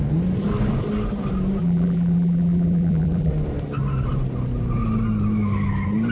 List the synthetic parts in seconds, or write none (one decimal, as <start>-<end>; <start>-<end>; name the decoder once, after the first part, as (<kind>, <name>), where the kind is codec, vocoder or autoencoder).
1.6-3.3 (vocoder, BigVGAN v2)